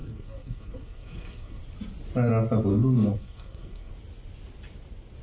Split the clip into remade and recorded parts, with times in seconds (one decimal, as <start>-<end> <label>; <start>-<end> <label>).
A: 0.0-1.6 remade; 1.6-2.7 recorded; 2.7-3.9 remade; 3.9-5.2 recorded